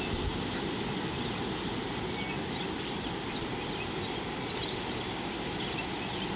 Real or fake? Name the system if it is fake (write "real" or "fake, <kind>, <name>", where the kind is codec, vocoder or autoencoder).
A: real